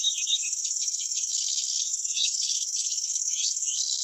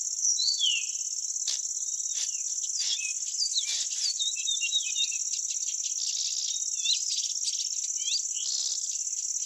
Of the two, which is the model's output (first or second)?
first